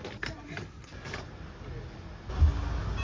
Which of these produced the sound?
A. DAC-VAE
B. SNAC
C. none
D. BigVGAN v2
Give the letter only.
C